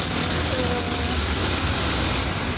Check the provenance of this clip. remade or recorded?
recorded